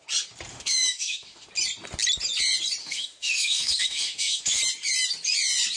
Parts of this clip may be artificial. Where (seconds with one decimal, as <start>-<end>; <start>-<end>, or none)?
0.5-1.5; 2.8-4.6